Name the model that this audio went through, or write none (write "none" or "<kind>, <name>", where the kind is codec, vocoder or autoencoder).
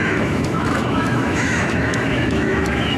autoencoder, DAC-VAE